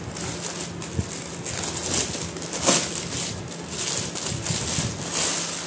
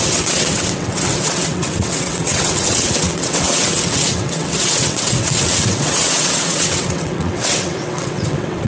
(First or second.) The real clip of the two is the first